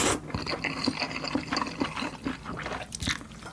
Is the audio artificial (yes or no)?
no